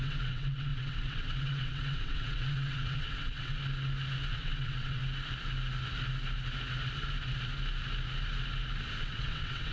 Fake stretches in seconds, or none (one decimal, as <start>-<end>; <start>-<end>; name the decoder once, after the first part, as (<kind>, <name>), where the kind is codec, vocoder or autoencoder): 0.0-3.6 (vocoder, WaveNeXt); 4.3-5.0; 9.0-9.7